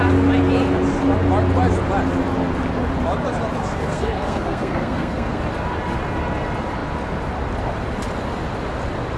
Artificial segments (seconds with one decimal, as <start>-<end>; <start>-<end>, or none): 3.7-5.4